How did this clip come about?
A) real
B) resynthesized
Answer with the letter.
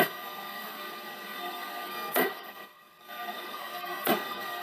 B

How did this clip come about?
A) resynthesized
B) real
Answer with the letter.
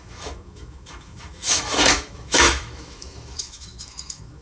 A